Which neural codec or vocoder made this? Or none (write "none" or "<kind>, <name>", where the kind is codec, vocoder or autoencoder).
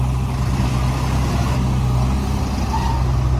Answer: none